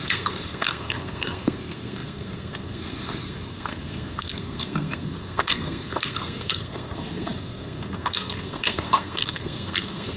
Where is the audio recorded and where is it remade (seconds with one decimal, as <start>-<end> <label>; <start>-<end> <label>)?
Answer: 0.0-10.2 remade